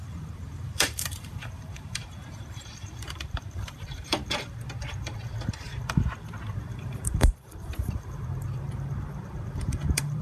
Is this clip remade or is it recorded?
remade